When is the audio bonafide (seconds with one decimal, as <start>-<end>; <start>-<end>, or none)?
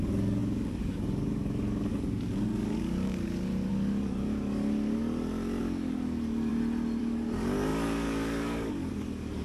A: 5.0-5.6; 6.5-7.0